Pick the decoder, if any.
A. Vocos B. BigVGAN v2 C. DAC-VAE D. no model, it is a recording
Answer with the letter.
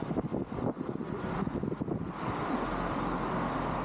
D